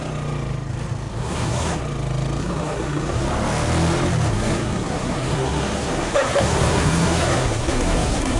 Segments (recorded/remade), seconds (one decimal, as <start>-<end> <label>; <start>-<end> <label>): 0.0-1.1 recorded; 1.1-1.8 remade; 1.8-2.4 recorded; 2.4-3.2 remade; 3.2-4.3 recorded; 4.3-8.4 remade